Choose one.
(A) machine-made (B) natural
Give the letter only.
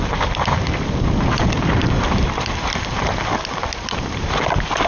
B